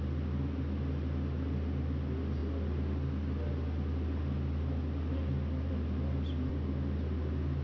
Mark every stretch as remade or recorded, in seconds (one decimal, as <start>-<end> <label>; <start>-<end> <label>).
0.0-7.6 recorded

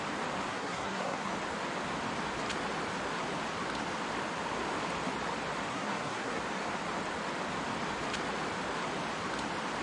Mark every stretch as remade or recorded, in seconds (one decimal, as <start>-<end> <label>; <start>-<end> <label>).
0.0-0.5 recorded; 0.5-1.3 remade; 1.3-5.7 recorded; 5.7-6.4 remade; 6.4-9.8 recorded

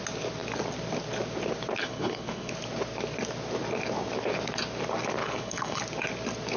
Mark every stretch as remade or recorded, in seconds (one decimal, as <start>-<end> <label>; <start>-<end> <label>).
0.0-1.8 recorded; 1.8-2.5 remade; 2.5-5.2 recorded; 5.2-5.8 remade; 5.8-6.6 recorded